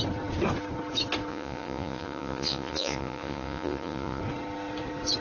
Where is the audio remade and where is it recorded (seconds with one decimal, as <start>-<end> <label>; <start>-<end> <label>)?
0.0-1.3 recorded; 1.3-4.2 remade; 4.2-5.2 recorded